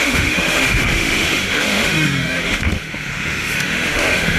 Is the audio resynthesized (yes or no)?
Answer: yes